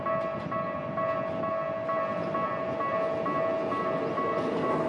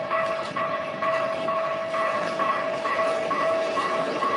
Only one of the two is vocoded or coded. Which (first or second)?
second